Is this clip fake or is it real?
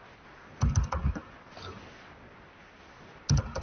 real